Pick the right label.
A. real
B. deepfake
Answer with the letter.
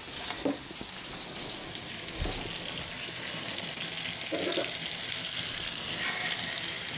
A